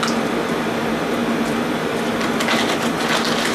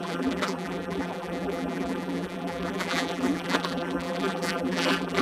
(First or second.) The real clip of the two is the first